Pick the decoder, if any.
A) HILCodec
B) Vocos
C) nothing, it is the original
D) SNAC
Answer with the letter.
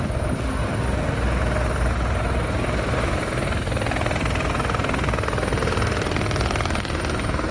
C